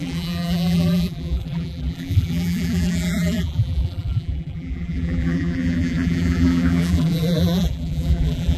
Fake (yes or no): yes